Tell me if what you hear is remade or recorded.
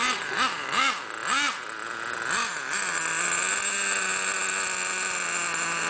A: recorded